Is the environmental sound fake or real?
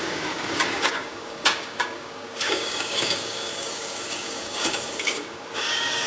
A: fake